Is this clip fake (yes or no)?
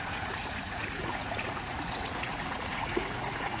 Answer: yes